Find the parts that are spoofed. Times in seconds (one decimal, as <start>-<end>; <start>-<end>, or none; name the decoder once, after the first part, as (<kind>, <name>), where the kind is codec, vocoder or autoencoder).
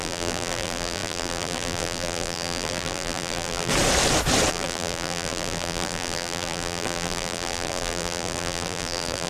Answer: 0.0-3.7 (vocoder, BigVGAN v2); 4.5-9.3